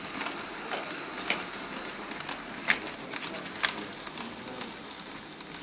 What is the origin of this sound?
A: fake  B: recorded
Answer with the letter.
B